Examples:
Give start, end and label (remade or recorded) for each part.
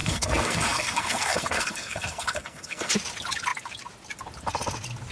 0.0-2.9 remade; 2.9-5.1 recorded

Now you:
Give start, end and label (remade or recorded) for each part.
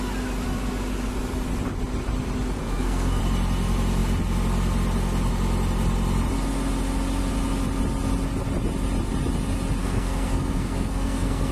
0.0-2.6 recorded; 2.6-3.2 remade; 3.2-9.8 recorded; 9.8-11.5 remade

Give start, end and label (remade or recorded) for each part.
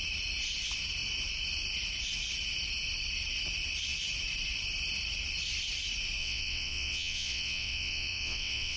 0.0-6.2 recorded; 6.2-8.8 remade